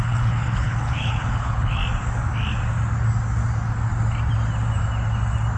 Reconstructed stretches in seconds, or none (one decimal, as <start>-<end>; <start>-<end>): 0.0-1.8